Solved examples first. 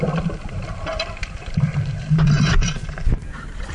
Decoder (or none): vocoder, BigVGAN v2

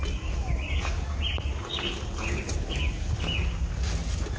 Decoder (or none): none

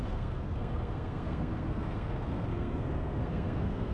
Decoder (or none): codec, SNAC